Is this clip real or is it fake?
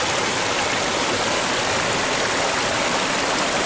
real